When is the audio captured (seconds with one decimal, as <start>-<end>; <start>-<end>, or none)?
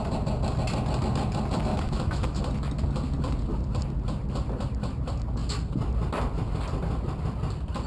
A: 0.0-1.7; 2.4-7.9